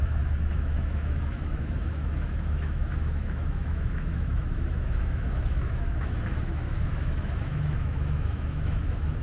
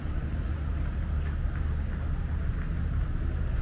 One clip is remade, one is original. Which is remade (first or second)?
first